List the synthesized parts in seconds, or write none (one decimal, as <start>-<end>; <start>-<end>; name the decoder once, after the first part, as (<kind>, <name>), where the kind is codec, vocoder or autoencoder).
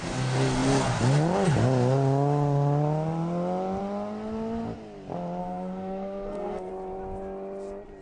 5.4-6.7 (codec, SNAC)